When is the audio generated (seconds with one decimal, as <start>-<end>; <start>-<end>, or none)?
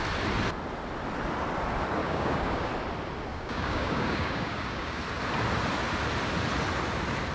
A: 2.0-2.7; 3.3-5.0